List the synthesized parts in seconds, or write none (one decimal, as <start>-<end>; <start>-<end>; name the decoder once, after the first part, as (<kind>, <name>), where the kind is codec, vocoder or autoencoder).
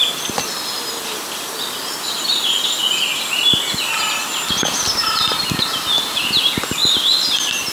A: none